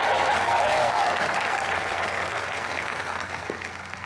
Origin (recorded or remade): remade